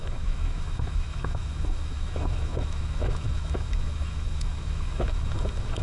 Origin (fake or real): fake